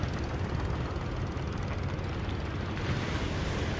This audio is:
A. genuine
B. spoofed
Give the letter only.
A